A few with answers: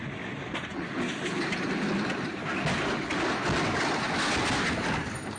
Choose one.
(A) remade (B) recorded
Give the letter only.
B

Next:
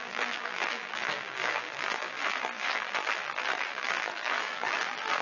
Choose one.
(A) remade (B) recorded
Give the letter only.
A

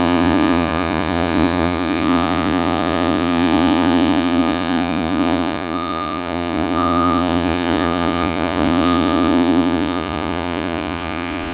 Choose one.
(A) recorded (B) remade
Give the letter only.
B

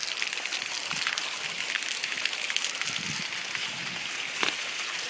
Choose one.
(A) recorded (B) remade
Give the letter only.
A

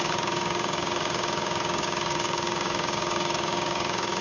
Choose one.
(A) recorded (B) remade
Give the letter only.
B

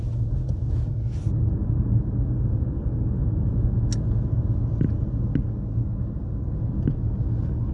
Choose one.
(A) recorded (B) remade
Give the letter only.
A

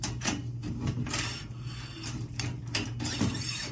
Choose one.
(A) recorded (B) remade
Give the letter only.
B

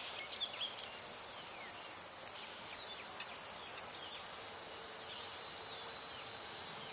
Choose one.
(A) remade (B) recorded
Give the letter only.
B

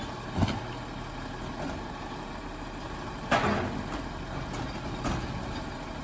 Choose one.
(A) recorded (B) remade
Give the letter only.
A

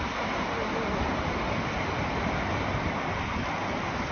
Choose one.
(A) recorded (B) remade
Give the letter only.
A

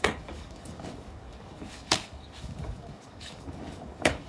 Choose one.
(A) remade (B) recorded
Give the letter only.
A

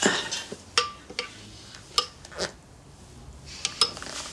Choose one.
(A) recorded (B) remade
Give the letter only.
A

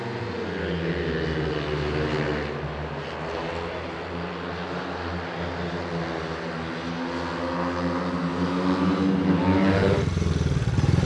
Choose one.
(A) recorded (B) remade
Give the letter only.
A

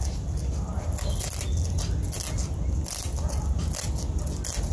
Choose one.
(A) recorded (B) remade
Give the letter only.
A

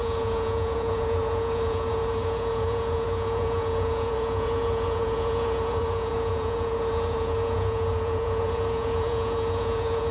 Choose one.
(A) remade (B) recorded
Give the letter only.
A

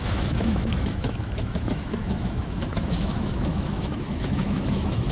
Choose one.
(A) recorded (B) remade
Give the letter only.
B